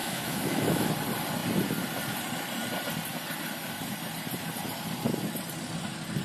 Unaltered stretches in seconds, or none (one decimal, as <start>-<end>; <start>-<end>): 0.9-6.2